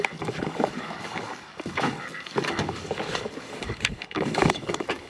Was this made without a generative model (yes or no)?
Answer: no